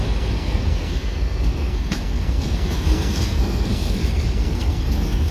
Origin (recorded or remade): remade